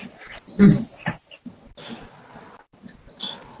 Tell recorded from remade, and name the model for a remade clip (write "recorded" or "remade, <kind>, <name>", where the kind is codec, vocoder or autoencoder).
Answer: recorded